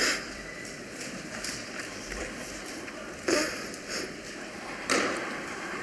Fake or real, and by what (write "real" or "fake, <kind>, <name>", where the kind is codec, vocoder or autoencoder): fake, vocoder, BigVGAN v2